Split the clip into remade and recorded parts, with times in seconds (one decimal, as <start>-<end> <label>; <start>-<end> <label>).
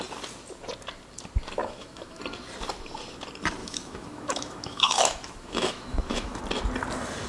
0.0-1.6 recorded; 1.6-2.2 remade; 2.2-3.6 recorded; 3.6-6.4 remade; 6.4-7.3 recorded